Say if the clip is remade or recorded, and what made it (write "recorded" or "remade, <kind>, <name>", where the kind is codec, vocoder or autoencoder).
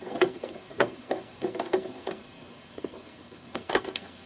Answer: remade, codec, SNAC